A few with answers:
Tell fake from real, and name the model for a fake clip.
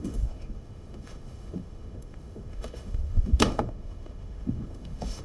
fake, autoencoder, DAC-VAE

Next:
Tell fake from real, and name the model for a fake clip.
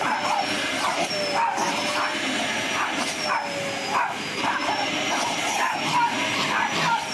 real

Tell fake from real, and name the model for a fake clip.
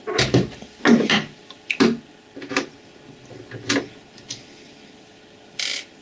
real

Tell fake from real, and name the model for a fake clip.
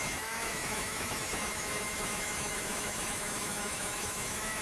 fake, autoencoder, DAC-VAE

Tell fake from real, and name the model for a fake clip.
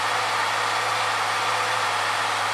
real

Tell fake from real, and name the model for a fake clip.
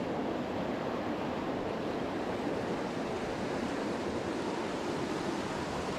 real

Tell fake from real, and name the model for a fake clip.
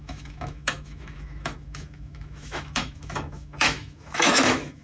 fake, autoencoder, DAC-VAE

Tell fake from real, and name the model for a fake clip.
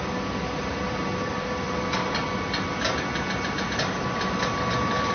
real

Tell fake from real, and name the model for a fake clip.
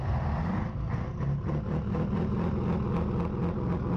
real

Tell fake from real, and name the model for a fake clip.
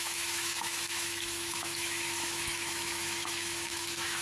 fake, autoencoder, DAC-VAE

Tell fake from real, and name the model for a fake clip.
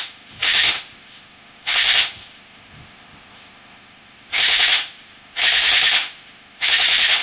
fake, autoencoder, DAC-VAE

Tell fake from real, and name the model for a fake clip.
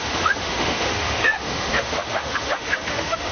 fake, autoencoder, DAC-VAE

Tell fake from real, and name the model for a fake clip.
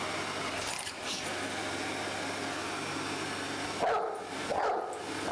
real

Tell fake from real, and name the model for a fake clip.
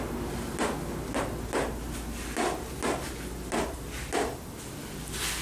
real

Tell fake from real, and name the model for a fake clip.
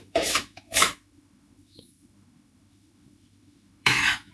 fake, autoencoder, DAC-VAE